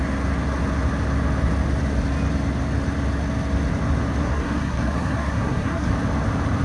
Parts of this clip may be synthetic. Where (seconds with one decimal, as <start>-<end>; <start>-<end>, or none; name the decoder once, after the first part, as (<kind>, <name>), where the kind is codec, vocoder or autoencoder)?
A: 4.2-5.9 (codec, SNAC)